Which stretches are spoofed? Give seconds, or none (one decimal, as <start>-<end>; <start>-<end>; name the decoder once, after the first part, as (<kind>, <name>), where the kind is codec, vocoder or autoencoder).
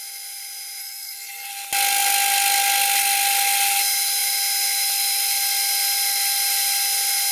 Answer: 0.8-1.5 (codec, SNAC)